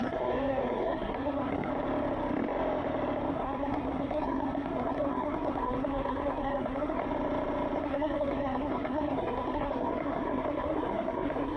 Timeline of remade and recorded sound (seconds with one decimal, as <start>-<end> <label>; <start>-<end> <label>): 0.0-1.7 remade; 1.7-3.3 recorded; 3.3-7.0 remade; 7.0-7.8 recorded; 7.8-11.6 remade